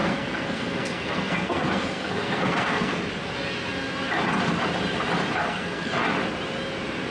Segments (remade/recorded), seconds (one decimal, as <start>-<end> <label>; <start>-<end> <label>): 0.0-3.0 remade; 3.0-5.4 recorded; 5.4-5.9 remade; 5.9-7.1 recorded